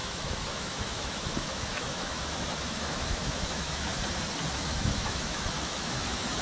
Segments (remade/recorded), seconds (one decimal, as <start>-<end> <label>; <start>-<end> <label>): 0.0-3.9 remade; 3.9-4.6 recorded; 4.6-6.4 remade